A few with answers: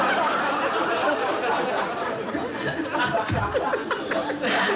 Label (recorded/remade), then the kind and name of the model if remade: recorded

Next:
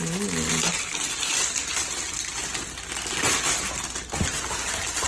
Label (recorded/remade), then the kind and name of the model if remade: recorded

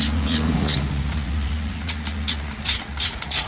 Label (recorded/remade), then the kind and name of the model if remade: remade, vocoder, Vocos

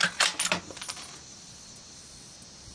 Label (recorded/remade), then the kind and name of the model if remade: recorded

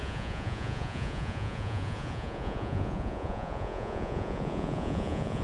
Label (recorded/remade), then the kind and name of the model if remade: remade, vocoder, Vocos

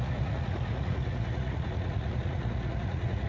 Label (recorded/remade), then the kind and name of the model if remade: remade, vocoder, Vocos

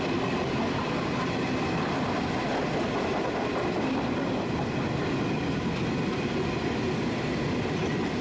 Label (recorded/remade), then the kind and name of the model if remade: recorded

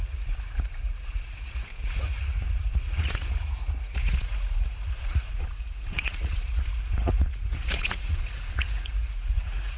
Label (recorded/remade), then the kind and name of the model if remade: remade, vocoder, Vocos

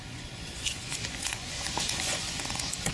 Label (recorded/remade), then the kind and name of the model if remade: remade, vocoder, Vocos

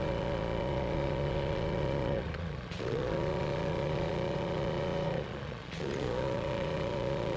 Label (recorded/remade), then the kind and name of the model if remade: remade, vocoder, Vocos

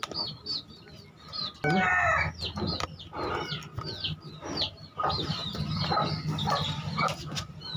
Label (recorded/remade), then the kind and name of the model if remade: recorded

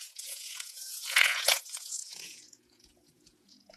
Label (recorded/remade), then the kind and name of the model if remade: remade, vocoder, Vocos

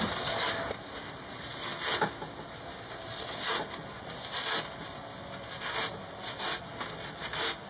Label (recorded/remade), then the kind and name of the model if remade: recorded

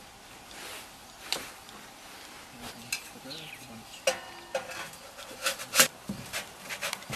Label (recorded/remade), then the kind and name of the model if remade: recorded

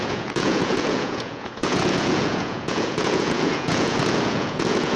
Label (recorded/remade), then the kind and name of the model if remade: remade, vocoder, Vocos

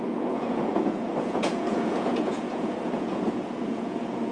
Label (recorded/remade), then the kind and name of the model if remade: remade, vocoder, Vocos